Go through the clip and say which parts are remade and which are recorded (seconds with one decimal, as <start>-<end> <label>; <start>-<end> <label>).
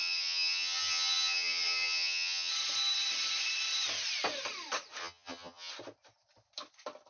0.0-2.5 remade; 2.5-5.0 recorded; 5.0-5.7 remade; 5.7-7.1 recorded